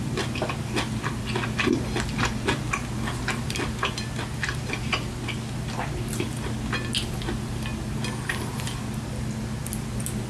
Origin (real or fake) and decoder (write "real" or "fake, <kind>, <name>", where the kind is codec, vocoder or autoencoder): real